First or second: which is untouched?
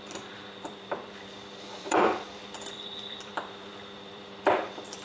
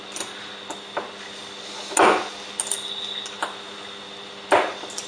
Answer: second